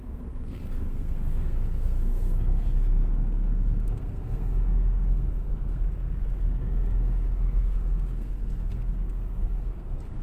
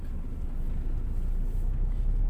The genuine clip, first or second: second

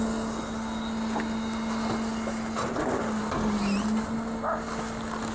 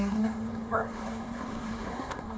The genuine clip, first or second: first